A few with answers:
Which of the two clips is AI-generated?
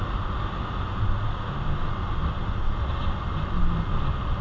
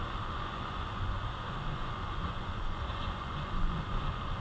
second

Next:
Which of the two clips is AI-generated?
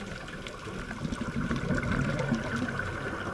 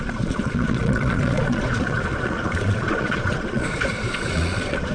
second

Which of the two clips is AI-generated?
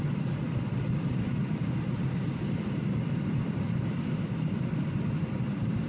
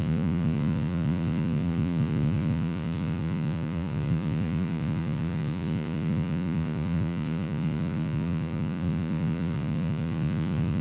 second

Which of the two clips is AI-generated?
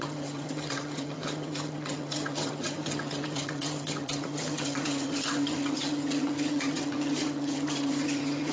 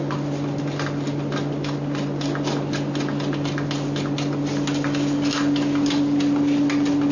first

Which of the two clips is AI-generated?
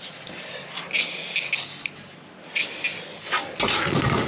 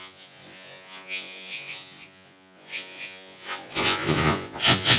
second